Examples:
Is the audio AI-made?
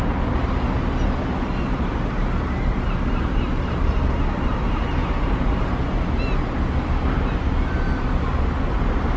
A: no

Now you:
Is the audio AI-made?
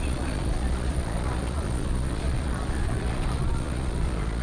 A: yes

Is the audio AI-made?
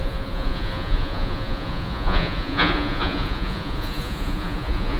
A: yes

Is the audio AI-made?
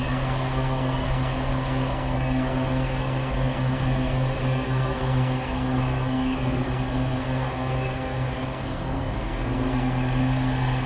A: yes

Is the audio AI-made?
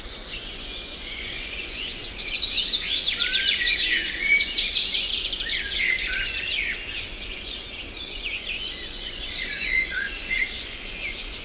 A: yes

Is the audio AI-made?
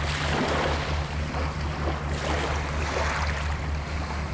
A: no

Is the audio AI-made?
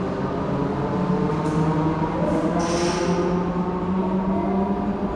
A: no